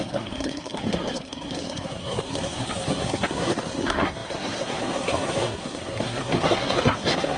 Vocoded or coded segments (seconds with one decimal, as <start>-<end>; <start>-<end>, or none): 0.0-7.4